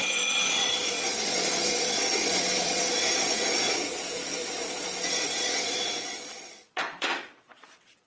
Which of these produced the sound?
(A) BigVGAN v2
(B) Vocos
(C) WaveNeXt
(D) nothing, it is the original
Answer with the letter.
B